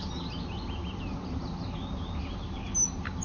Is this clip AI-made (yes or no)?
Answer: no